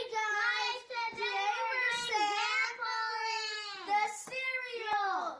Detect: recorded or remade recorded